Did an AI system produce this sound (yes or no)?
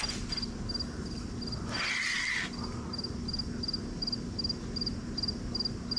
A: no